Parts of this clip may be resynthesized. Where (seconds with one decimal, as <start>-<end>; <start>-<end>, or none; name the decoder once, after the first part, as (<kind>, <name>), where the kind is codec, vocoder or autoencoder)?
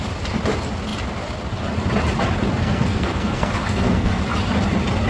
2.6-4.2 (codec, SNAC)